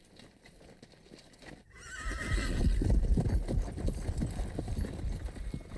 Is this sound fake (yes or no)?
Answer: no